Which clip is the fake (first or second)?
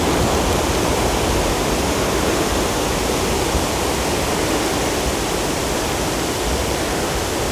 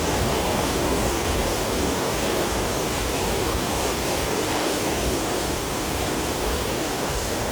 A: second